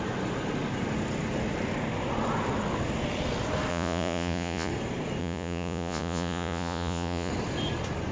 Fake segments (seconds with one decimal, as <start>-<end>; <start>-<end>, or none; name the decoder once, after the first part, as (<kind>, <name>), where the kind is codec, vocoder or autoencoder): 3.7-4.7 (vocoder, Vocos); 5.2-7.3